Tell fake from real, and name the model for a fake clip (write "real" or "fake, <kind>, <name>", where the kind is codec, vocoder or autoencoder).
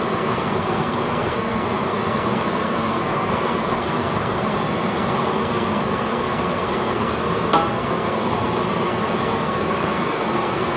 fake, codec, SNAC